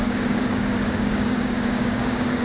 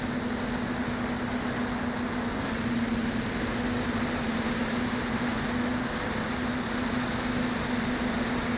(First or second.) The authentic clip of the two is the second